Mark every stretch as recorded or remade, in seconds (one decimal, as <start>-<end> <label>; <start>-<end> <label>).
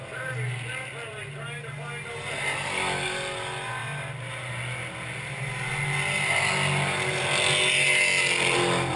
0.0-9.0 recorded